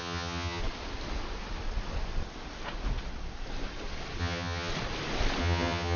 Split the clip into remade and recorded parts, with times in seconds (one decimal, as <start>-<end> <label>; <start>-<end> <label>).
0.0-0.6 remade; 0.6-4.2 recorded; 4.2-4.7 remade; 4.7-5.4 recorded; 5.4-6.0 remade